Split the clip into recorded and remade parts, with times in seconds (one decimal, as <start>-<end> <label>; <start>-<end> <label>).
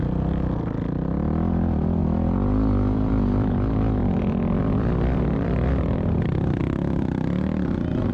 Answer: 0.0-2.0 recorded; 2.0-3.5 remade; 3.5-4.0 recorded; 4.0-6.6 remade; 6.6-8.1 recorded